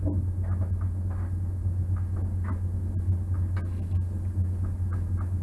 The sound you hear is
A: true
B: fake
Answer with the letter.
A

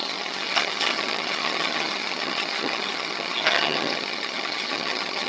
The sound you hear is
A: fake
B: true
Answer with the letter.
A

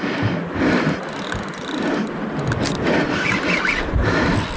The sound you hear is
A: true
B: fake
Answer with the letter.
A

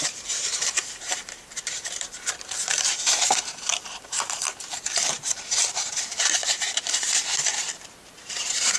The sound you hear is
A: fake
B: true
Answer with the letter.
A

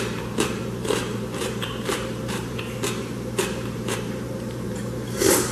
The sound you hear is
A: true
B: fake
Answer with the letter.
B